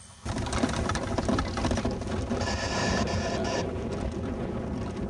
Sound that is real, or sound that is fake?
real